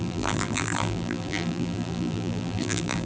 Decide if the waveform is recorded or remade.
remade